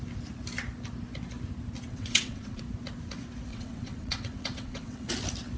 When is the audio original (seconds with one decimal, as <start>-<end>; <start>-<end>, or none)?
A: 0.0-1.9; 2.6-3.5; 5.1-5.6